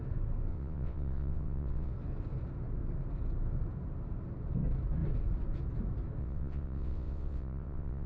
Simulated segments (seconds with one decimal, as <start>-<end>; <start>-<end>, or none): 0.5-1.9; 6.2-8.1